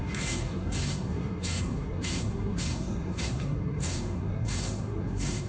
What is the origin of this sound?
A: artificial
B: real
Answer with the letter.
A